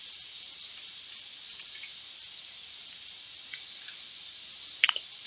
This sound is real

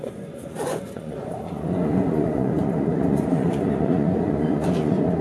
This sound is fake